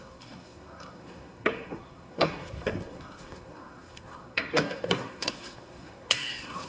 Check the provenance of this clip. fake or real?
fake